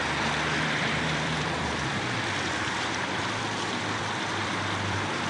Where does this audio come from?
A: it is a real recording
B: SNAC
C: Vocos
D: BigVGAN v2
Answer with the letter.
D